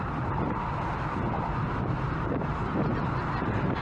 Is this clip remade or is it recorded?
recorded